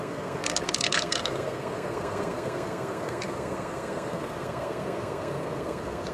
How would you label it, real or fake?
fake